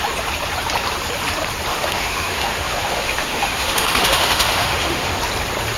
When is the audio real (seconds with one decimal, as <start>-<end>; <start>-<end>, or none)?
0.0-1.7; 5.2-5.8